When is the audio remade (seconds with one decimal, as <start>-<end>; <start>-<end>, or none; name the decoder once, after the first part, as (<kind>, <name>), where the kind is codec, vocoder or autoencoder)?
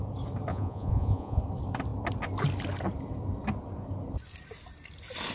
0.5-1.4 (vocoder, Vocos)